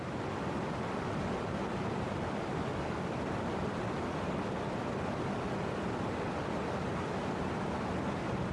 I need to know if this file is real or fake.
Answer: real